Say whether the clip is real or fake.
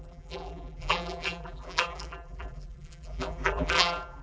fake